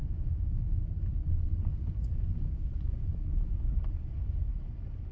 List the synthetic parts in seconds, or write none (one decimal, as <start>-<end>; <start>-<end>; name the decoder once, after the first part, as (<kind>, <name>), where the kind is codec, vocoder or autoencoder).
0.0-0.8 (autoencoder, DAC-VAE)